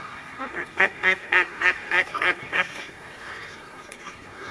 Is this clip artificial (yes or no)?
yes